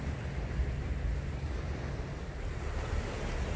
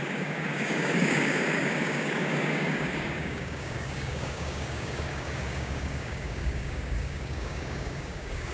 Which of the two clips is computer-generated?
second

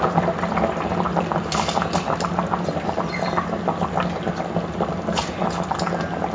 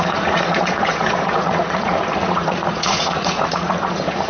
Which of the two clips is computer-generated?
second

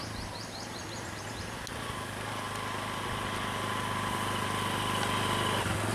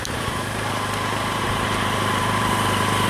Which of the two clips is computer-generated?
second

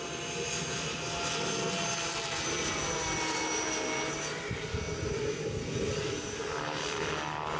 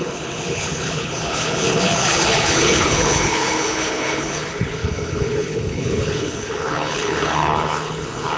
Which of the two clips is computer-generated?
second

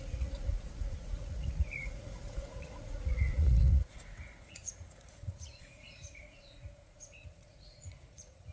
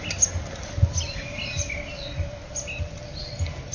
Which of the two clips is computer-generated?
first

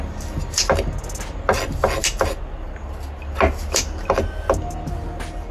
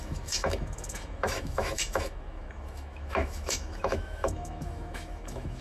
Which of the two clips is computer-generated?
second